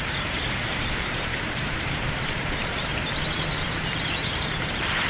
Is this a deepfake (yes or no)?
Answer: yes